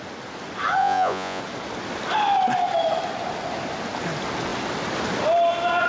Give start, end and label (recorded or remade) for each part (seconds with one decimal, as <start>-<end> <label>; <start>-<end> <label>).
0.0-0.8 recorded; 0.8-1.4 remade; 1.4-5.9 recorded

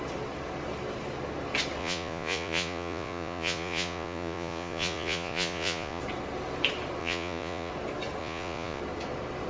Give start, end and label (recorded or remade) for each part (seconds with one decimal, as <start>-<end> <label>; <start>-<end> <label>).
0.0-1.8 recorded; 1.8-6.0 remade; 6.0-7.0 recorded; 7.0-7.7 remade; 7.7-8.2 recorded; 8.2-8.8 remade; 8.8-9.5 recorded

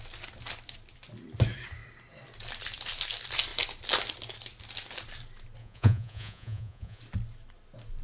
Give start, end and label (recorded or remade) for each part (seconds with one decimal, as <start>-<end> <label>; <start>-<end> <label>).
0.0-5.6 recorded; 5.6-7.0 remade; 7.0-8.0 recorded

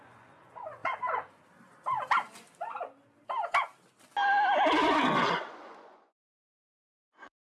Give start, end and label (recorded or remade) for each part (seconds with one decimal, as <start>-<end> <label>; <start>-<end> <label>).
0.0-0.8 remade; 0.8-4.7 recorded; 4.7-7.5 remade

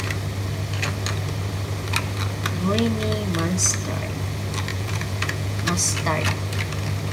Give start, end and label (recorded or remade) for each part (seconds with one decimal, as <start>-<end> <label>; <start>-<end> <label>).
0.0-4.7 recorded; 4.7-5.7 remade; 5.7-7.1 recorded

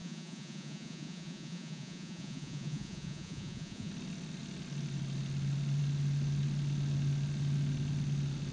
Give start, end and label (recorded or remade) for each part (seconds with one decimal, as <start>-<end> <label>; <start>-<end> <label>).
0.0-3.9 remade; 3.9-8.5 recorded